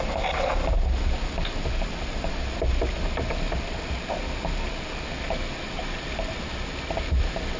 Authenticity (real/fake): real